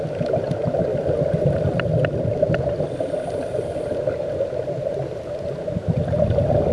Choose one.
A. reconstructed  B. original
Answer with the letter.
B